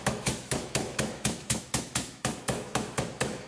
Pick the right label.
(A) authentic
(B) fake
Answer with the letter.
B